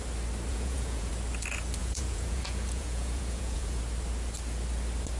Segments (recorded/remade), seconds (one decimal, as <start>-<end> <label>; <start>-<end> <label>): 0.0-0.5 recorded; 0.5-1.1 remade; 1.1-1.8 recorded; 1.8-3.8 remade; 3.8-5.2 recorded